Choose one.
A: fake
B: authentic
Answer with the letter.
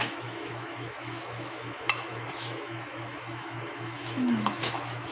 A